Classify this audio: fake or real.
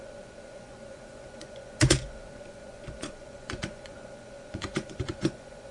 fake